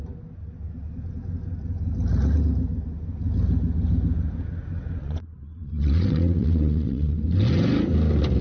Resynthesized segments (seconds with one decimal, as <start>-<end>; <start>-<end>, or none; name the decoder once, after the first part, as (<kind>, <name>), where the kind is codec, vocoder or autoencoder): 5.0-7.2 (vocoder, WaveNeXt)